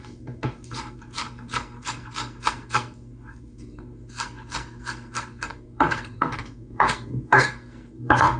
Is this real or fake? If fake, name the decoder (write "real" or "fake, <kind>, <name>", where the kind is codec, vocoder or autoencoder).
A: fake, codec, SNAC